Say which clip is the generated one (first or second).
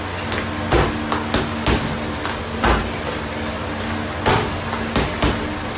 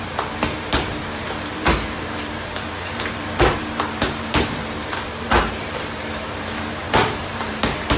second